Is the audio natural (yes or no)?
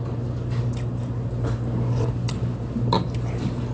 yes